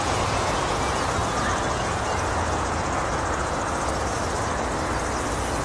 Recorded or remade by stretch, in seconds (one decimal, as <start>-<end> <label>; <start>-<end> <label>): 0.0-4.2 remade; 4.2-5.6 recorded